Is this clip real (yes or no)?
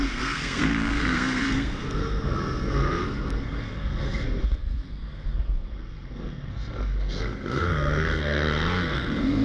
no